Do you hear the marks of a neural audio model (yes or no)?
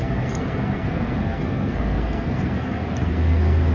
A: yes